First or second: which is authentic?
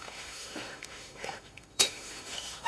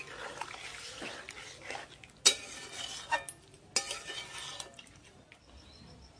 second